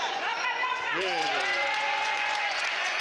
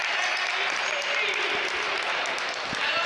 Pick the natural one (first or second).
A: second